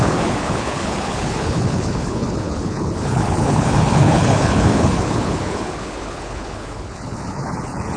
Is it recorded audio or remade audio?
remade